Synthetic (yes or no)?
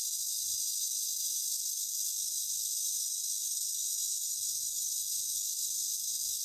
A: yes